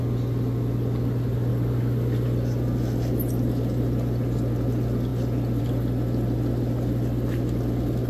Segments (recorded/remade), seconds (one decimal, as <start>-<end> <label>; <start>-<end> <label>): 0.0-1.5 recorded; 1.5-4.2 remade; 4.2-8.1 recorded